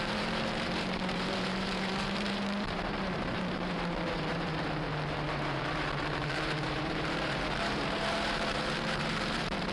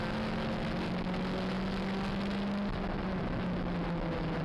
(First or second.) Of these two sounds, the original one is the second